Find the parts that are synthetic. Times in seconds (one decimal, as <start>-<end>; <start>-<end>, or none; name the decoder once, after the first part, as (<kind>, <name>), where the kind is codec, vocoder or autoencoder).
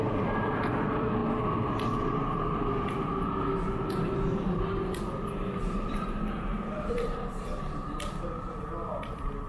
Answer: 0.0-1.2 (vocoder, BigVGAN v2); 5.6-6.5; 8.4-9.5